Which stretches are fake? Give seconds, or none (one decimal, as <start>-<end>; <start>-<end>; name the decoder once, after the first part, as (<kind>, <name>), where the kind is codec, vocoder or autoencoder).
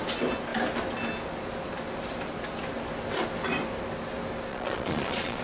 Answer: 4.5-5.4 (vocoder, Vocos)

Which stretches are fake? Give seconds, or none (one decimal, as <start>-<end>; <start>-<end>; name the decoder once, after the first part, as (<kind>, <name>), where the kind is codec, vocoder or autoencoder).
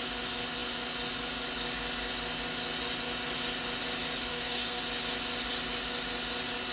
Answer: 4.3-4.8 (codec, SNAC)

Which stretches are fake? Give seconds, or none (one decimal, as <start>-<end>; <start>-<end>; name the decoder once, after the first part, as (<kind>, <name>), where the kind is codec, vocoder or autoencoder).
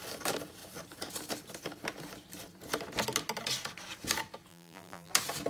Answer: 4.5-5.1 (vocoder, BigVGAN v2)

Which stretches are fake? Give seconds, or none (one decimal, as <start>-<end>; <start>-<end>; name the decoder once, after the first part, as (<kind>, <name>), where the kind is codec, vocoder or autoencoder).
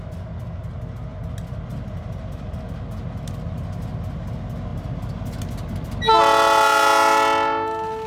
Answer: none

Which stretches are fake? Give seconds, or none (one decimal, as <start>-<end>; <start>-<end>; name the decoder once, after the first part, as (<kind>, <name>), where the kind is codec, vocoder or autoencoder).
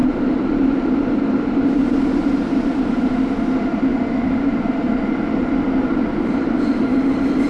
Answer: 0.0-3.1 (vocoder, BigVGAN v2); 3.9-4.8; 6.1-6.8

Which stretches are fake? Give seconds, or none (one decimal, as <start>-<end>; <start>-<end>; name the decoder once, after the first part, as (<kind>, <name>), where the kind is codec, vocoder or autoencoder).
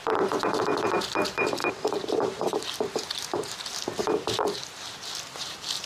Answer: 0.6-1.6 (vocoder, BigVGAN v2); 2.1-2.6; 5.4-5.9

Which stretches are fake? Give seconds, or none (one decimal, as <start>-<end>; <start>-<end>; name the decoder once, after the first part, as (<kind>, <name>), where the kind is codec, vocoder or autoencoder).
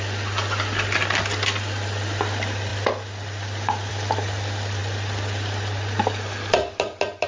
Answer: none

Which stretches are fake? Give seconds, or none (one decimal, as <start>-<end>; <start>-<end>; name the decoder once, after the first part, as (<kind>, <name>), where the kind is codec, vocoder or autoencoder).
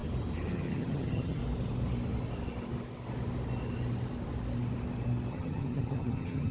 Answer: 0.5-1.4 (vocoder, HiFi-GAN); 5.3-6.5